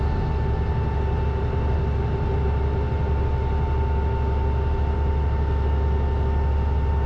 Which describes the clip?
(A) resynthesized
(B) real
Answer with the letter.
B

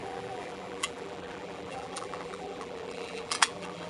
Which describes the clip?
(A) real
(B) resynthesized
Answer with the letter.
B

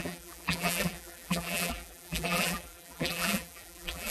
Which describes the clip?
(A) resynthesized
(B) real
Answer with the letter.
A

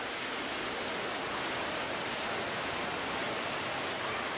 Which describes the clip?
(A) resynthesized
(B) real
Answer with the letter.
B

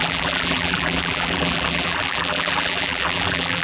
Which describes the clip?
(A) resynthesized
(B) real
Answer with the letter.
A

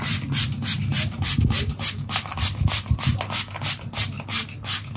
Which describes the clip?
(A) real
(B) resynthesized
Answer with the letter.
A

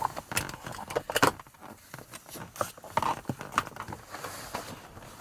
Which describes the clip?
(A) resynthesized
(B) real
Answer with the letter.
B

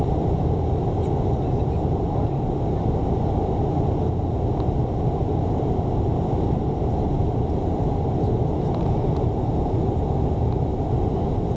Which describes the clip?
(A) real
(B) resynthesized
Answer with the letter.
A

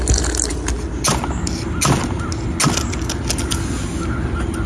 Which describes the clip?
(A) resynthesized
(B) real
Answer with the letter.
B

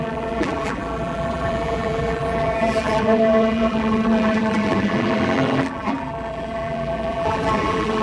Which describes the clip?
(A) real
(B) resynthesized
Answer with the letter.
B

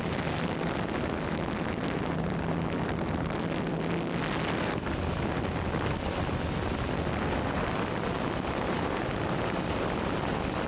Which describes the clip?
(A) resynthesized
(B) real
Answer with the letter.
B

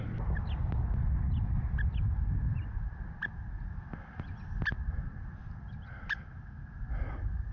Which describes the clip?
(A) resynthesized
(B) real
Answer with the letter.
B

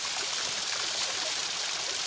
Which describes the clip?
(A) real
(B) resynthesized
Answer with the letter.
A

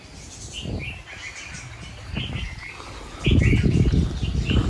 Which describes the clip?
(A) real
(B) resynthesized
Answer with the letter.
A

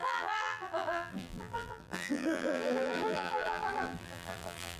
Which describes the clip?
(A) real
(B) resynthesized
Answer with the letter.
B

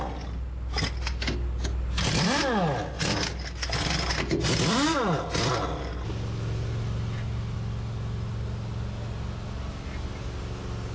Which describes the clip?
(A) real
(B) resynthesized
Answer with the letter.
A